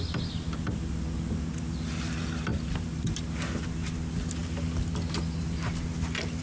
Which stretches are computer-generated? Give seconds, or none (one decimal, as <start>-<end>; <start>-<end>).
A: 2.5-3.3